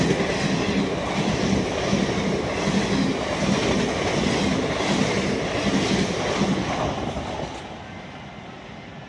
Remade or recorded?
recorded